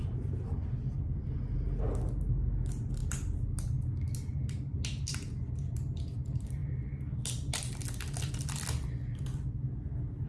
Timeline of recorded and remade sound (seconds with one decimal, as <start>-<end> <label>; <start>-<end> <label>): 0.0-10.3 recorded